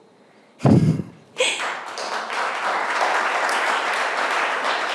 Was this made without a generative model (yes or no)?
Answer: yes